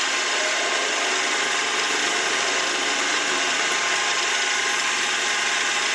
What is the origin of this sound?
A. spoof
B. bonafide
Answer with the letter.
B